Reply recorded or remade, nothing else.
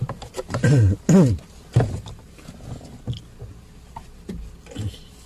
recorded